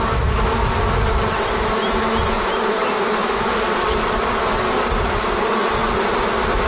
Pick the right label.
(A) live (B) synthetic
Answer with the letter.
A